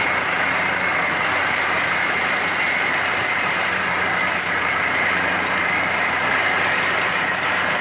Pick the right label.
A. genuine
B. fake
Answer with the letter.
B